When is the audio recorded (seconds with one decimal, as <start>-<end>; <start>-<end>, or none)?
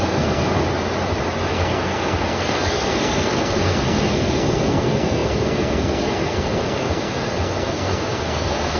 0.6-1.5